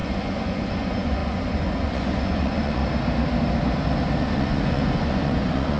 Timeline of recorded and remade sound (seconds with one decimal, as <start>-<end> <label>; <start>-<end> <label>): 0.0-2.8 remade; 2.8-4.2 recorded; 4.2-5.8 remade